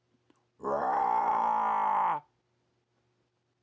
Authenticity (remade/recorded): recorded